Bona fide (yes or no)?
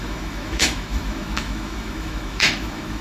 no